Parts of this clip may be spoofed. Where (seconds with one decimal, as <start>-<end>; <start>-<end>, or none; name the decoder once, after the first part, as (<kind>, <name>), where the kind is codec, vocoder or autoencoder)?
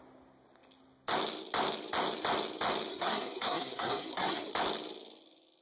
2.9-4.5 (codec, SNAC)